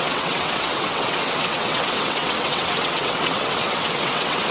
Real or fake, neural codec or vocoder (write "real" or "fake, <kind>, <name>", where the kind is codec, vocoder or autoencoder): fake, vocoder, WaveNeXt